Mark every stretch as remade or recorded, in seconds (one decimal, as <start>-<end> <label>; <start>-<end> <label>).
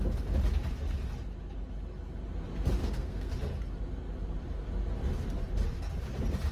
0.0-2.8 recorded; 2.8-3.3 remade; 3.3-6.5 recorded